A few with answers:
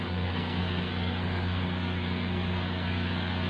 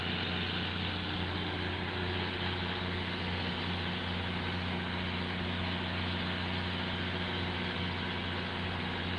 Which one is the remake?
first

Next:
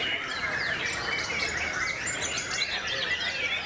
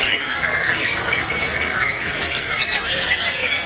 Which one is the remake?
second